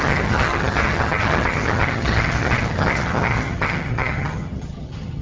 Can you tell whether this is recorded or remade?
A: remade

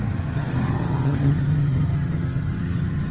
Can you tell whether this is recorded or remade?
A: remade